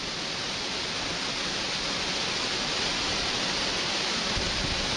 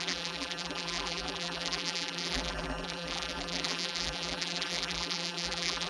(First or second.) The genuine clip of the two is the first